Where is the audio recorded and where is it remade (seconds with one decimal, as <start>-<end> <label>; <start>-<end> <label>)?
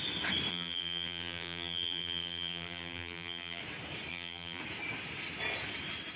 0.0-0.5 recorded; 0.5-3.6 remade; 3.6-4.1 recorded; 4.1-4.6 remade; 4.6-6.2 recorded